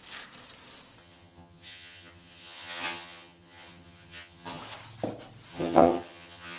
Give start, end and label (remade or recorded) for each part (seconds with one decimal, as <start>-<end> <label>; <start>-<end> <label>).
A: 0.0-1.0 recorded; 1.0-4.6 remade; 4.6-5.5 recorded; 5.5-6.6 remade